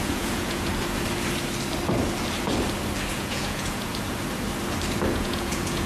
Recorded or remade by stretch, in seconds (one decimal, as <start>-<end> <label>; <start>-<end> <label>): 0.0-0.7 remade; 0.7-3.1 recorded; 3.1-3.9 remade; 3.9-5.1 recorded; 5.1-5.9 remade